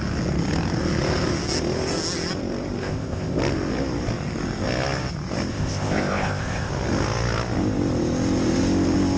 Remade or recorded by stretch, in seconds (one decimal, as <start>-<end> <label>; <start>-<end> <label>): 0.0-2.8 recorded; 2.8-3.4 remade; 3.4-5.5 recorded; 5.5-6.7 remade; 6.7-9.2 recorded